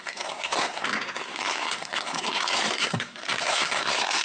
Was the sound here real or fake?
fake